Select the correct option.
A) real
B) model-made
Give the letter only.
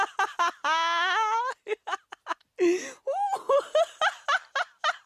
A